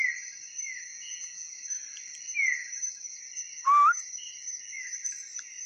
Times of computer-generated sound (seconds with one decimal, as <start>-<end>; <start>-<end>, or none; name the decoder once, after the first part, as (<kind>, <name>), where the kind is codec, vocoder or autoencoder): 0.9-1.5 (vocoder, Vocos)